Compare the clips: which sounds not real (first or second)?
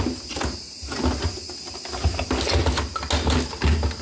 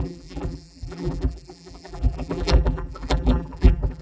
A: second